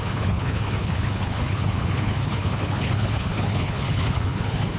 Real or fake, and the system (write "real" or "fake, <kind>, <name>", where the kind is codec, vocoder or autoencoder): fake, codec, HILCodec